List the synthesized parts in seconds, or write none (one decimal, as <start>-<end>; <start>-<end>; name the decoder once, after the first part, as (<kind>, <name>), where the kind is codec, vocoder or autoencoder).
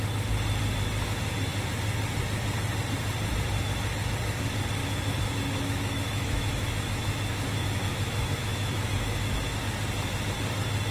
4.8-9.6 (autoencoder, DAC-VAE)